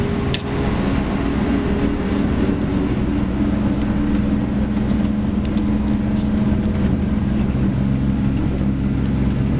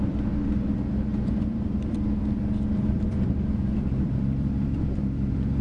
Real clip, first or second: first